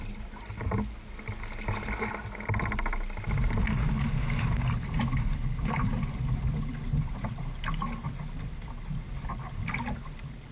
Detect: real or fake real